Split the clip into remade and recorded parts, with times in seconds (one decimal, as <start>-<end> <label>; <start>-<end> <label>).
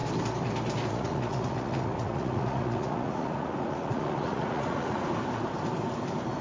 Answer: 0.0-0.9 recorded; 0.9-5.1 remade; 5.1-6.4 recorded